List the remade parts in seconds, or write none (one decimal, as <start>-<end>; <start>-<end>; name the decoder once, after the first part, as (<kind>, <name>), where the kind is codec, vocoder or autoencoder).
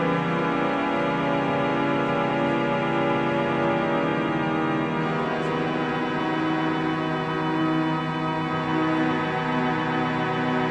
none